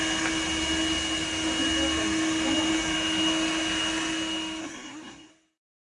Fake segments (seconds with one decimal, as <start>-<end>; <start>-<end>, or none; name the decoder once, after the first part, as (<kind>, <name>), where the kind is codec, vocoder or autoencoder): 4.6-5.3 (codec, SNAC)